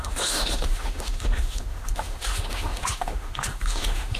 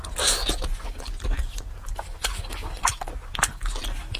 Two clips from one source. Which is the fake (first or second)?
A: first